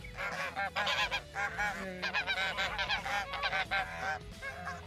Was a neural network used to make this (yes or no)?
no